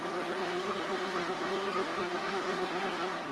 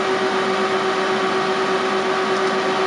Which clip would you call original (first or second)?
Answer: second